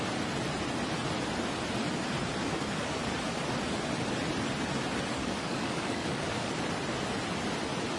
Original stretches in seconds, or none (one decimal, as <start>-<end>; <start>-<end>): 0.0-2.4; 3.0-5.2; 6.5-8.0